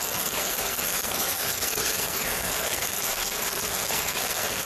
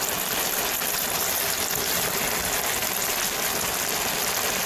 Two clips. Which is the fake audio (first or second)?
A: first